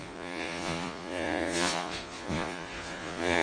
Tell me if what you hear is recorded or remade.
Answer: remade